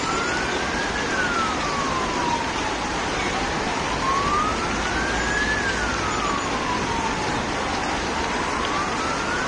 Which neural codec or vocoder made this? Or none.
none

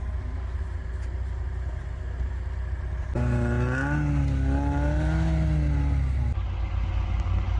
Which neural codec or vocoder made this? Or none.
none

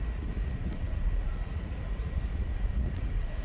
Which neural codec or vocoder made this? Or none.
vocoder, Vocos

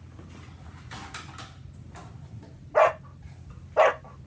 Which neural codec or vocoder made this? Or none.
none